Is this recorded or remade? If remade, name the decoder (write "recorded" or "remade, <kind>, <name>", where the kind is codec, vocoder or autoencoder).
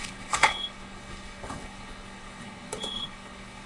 remade, codec, HILCodec